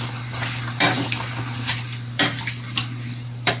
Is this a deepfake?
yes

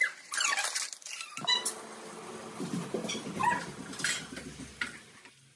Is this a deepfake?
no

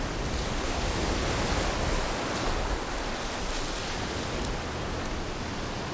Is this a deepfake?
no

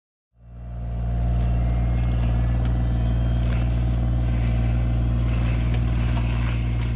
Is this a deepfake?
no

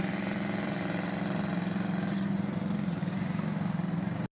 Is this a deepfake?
yes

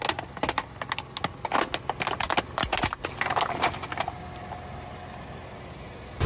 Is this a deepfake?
no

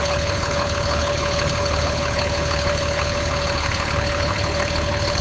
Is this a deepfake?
yes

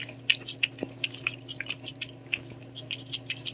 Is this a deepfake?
no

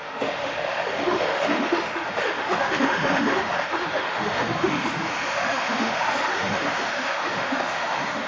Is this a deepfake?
yes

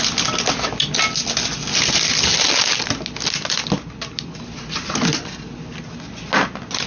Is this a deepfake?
no